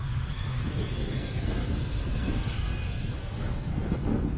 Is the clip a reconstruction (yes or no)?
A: yes